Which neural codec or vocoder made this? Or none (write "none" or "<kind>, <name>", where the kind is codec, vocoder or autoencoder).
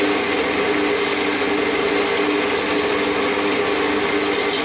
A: none